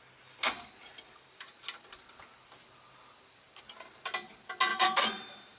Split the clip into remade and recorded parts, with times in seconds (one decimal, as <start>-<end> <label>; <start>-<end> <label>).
0.0-4.7 recorded; 4.7-5.6 remade

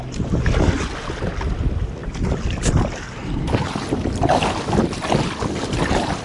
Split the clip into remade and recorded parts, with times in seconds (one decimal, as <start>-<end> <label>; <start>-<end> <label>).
0.0-2.0 recorded; 2.0-5.7 remade; 5.7-6.2 recorded